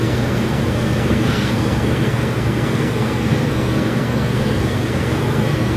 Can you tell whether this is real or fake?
fake